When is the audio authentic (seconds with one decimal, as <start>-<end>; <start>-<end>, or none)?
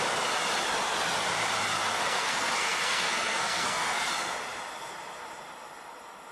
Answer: 0.0-1.8; 4.1-6.3